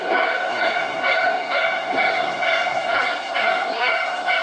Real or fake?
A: fake